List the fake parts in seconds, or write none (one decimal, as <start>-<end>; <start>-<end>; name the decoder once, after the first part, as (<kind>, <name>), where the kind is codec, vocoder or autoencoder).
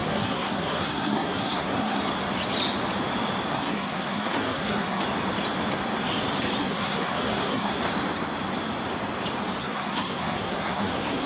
0.0-2.0 (codec, SNAC); 3.5-5.0; 6.6-7.8; 9.6-11.3